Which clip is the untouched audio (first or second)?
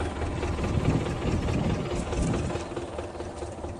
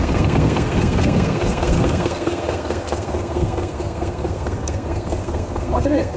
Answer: first